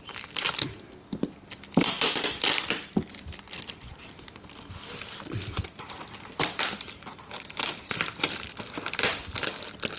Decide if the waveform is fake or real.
fake